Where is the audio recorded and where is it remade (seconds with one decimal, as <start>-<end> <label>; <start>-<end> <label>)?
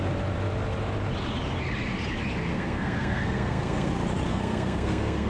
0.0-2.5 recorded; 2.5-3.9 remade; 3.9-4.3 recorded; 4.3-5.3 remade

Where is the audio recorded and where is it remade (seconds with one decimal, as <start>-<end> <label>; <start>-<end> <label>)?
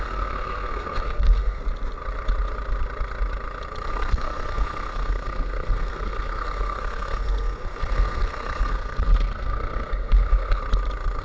0.0-1.6 remade; 1.6-3.9 recorded; 3.9-10.6 remade; 10.6-11.2 recorded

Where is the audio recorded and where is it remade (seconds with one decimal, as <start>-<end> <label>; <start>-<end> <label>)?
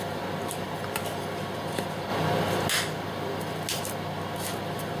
0.0-5.0 recorded